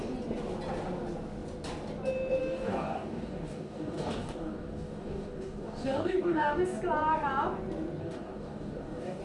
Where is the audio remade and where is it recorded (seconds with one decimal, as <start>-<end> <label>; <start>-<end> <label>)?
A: 0.0-2.4 recorded; 2.4-6.8 remade; 6.8-8.0 recorded; 8.0-9.2 remade